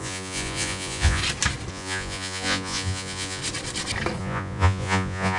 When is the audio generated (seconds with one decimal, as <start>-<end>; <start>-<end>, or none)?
0.0-1.2; 1.7-3.4; 4.2-5.4